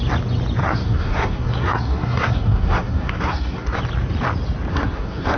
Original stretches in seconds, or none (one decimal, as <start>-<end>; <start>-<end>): 0.0-0.6; 3.8-4.7